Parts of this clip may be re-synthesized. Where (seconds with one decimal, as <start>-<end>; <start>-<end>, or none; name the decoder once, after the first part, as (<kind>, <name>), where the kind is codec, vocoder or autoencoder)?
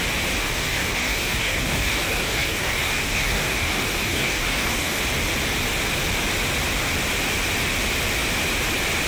0.4-5.0 (codec, DAC)